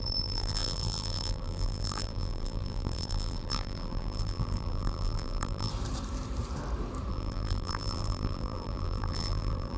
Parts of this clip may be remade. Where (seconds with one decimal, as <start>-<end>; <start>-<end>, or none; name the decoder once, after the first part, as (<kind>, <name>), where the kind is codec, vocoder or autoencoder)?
0.0-5.7 (vocoder, BigVGAN v2); 7.1-9.8